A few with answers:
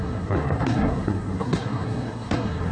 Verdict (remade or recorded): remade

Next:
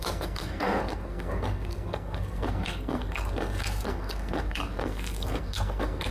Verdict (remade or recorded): remade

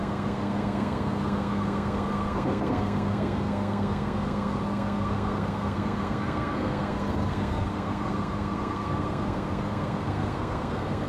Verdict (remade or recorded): remade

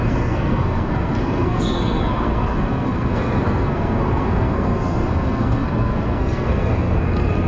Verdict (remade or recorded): remade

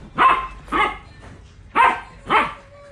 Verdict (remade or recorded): recorded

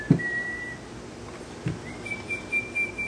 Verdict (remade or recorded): recorded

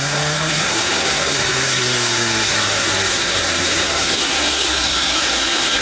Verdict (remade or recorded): remade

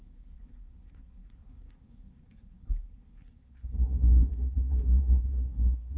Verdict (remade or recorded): remade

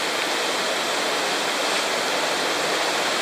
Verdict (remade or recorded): recorded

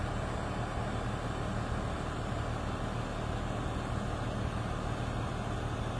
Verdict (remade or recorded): recorded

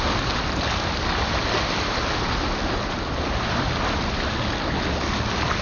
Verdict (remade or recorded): recorded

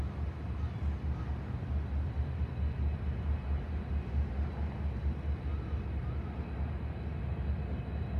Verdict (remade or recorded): recorded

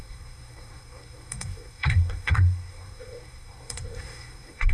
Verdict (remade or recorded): remade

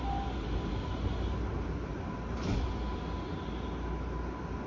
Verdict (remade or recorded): recorded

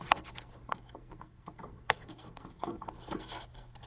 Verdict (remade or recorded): remade